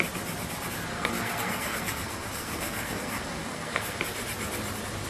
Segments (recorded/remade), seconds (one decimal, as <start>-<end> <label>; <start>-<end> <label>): 0.0-0.9 recorded; 0.9-4.0 remade; 4.0-5.1 recorded